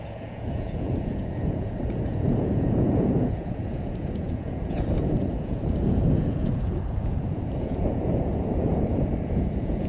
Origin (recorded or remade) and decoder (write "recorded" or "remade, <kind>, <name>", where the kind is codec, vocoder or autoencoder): remade, vocoder, Vocos